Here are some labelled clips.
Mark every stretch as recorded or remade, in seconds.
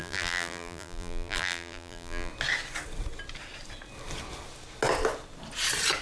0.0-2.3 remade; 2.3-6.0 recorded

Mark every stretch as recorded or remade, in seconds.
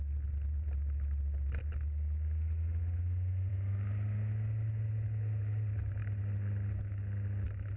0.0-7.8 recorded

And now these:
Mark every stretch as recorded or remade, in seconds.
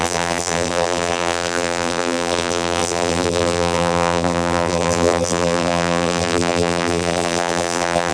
0.0-8.1 remade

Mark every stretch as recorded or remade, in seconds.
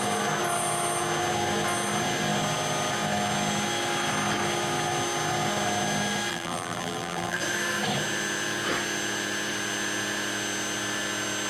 0.0-6.3 recorded; 6.3-7.4 remade; 7.4-11.5 recorded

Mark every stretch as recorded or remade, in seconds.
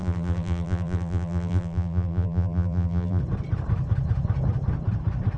0.0-3.2 remade; 3.2-5.4 recorded